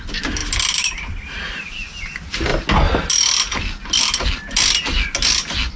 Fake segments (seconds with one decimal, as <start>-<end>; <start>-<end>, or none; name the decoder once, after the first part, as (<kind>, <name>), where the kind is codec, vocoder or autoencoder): none